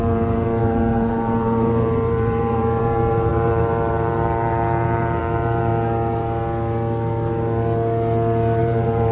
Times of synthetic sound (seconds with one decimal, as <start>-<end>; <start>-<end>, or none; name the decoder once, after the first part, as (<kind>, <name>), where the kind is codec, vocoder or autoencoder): 0.0-5.7 (vocoder, BigVGAN v2); 8.6-9.1